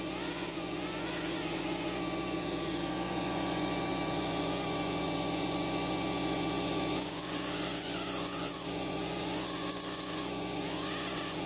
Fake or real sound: fake